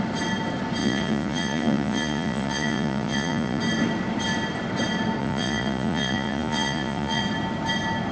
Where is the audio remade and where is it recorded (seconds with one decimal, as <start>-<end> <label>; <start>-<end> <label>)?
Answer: 0.0-0.8 recorded; 0.8-3.6 remade; 3.6-5.2 recorded; 5.2-7.2 remade; 7.2-8.1 recorded